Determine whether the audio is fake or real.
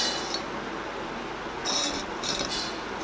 real